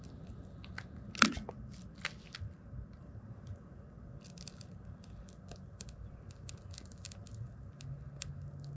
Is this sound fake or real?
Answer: real